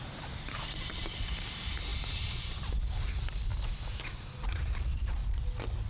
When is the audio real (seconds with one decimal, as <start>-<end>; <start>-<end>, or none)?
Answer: 3.5-4.0; 5.2-5.9